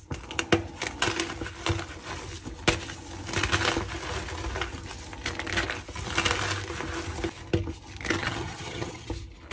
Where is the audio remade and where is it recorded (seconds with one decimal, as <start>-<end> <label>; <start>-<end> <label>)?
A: 0.0-8.2 recorded; 8.2-9.1 remade; 9.1-9.5 recorded